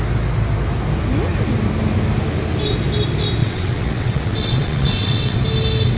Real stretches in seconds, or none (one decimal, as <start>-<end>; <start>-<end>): 0.0-3.4; 5.4-6.0